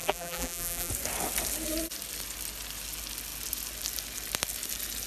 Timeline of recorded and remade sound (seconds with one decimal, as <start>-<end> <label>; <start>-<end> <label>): 0.0-0.9 remade; 0.9-5.1 recorded